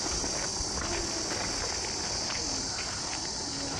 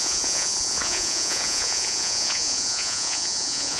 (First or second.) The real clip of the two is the first